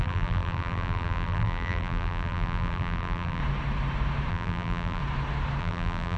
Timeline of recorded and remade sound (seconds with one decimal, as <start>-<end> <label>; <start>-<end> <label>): 0.0-3.4 remade; 3.4-4.3 recorded; 4.3-5.0 remade; 5.0-5.6 recorded; 5.6-6.2 remade